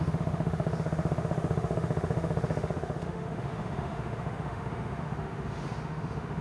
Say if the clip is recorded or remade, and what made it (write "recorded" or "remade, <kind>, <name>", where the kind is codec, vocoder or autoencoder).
remade, autoencoder, DAC-VAE